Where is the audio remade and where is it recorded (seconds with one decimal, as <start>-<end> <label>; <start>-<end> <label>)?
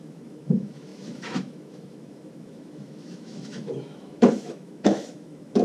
0.0-5.6 remade